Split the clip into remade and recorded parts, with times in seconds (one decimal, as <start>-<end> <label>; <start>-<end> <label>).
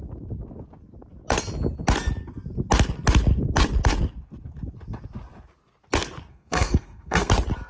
0.0-6.3 recorded; 6.3-7.3 remade; 7.3-7.7 recorded